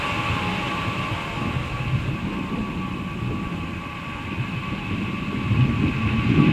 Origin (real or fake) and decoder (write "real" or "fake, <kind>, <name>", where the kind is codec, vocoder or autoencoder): real